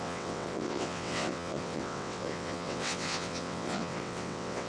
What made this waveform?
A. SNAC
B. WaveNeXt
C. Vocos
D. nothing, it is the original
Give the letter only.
B